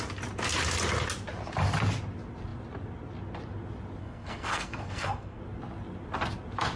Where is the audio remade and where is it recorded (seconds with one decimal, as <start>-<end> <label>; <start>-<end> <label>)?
0.0-4.0 recorded; 4.0-5.4 remade; 5.4-6.8 recorded